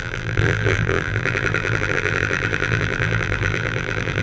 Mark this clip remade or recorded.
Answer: remade